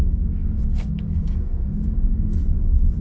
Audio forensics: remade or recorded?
remade